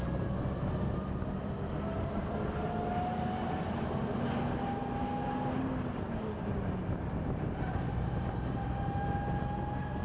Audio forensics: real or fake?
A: real